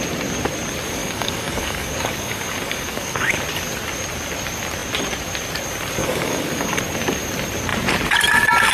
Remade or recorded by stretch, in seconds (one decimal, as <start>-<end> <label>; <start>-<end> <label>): 0.0-1.0 recorded; 1.0-3.4 remade; 3.4-6.0 recorded; 6.0-6.8 remade; 6.8-8.7 recorded